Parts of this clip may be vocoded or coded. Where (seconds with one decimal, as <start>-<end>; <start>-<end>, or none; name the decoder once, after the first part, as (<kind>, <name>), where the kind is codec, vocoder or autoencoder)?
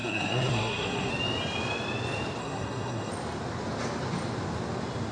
0.0-1.1 (codec, SNAC); 2.4-3.1